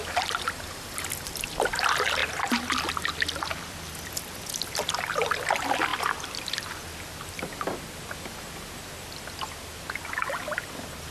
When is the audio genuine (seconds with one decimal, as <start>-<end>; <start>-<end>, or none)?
0.0-11.1